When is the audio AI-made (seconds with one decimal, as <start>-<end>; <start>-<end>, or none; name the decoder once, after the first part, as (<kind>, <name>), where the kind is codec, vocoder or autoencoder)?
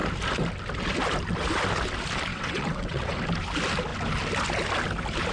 2.3-3.1 (vocoder, WaveNeXt)